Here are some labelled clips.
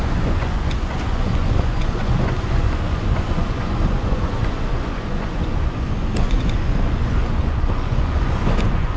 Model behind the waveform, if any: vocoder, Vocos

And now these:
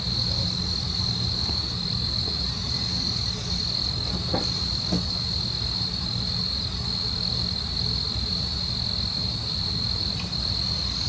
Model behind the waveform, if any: none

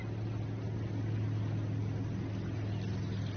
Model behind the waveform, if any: none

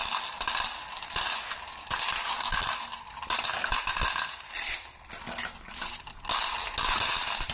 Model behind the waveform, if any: none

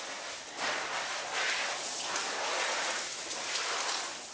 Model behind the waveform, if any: none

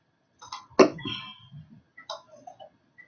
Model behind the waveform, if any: none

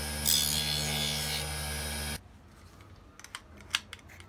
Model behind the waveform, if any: none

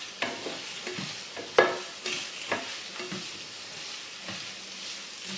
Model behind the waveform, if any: none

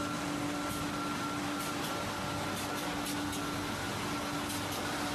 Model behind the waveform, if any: none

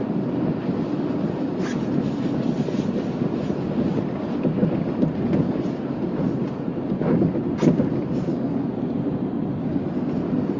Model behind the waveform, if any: none